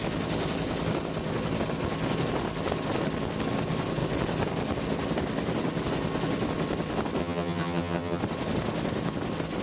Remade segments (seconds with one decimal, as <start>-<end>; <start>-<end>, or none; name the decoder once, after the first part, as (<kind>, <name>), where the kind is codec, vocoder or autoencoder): 7.2-8.2 (vocoder, HiFi-GAN)